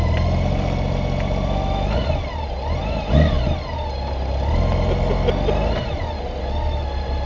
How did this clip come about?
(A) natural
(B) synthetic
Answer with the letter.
A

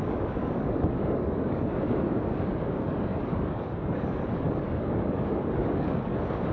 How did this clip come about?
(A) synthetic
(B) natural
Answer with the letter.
A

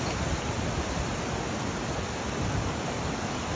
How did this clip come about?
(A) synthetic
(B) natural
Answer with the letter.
B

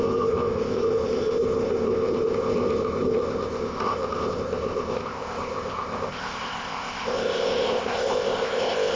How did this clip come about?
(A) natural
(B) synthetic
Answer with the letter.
B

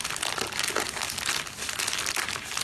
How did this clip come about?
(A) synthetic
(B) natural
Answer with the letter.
B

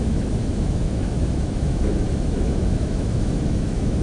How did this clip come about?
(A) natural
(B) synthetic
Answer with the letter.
B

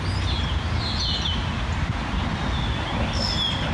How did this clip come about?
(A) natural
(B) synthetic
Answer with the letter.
A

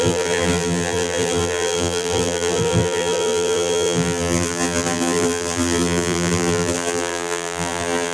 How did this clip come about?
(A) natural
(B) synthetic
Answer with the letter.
B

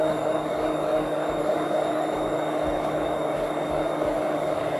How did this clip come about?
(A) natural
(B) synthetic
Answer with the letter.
B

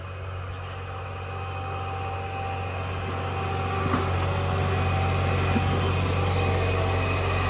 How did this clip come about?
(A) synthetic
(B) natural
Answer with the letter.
B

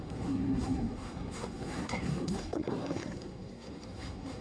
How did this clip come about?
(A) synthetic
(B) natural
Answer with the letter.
A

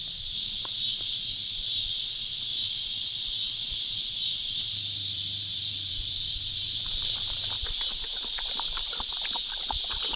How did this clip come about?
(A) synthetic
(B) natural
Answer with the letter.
A